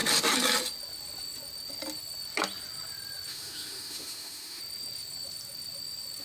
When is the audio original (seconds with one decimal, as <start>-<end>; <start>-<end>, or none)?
0.0-3.3; 4.6-6.2